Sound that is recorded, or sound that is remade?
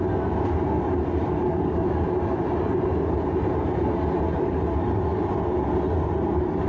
recorded